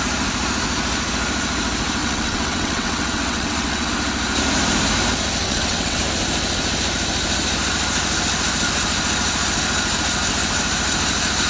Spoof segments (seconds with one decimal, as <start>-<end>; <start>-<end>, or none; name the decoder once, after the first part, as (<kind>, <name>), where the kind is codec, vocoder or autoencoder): 2.0-3.9 (vocoder, WaveNeXt); 5.4-6.0